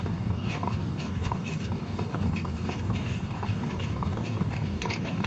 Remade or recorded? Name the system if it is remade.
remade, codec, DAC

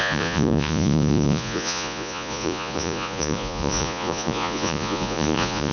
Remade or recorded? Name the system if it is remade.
remade, vocoder, Vocos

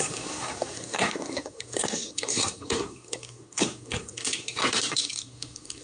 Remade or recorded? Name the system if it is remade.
remade, codec, SNAC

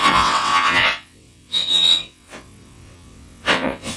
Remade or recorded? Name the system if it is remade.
remade, vocoder, WaveNeXt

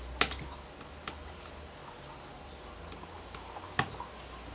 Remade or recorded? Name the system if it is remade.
recorded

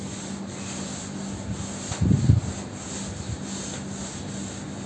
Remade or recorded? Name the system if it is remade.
recorded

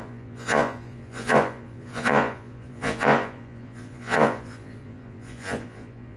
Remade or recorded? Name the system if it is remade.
remade, vocoder, Vocos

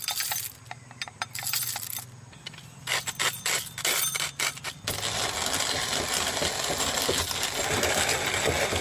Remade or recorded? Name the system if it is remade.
recorded